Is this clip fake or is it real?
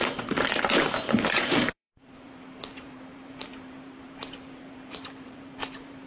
fake